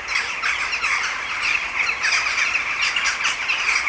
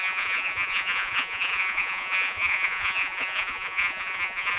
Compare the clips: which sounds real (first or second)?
first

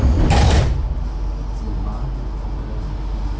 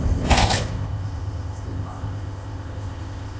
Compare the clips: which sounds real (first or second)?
first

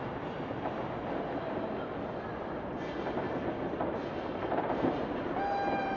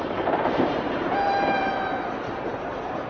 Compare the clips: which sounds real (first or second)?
first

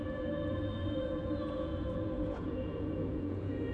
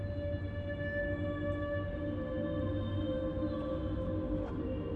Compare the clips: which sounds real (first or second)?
second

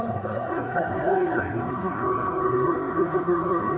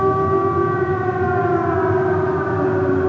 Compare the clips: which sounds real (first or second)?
second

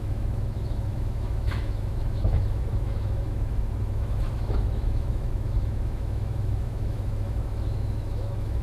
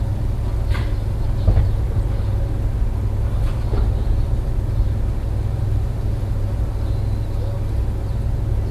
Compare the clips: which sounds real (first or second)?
second